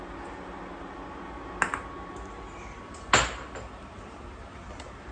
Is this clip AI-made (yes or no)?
no